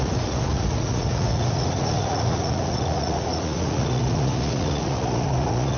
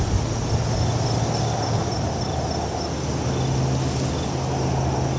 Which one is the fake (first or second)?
first